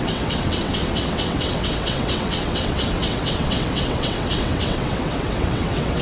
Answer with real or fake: fake